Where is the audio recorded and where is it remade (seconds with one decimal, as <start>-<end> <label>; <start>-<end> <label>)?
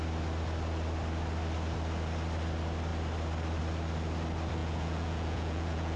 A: 0.0-4.6 recorded; 4.6-6.0 remade